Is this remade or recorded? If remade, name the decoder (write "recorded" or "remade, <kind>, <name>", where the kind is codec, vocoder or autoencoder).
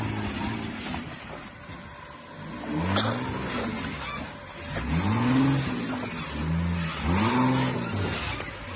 recorded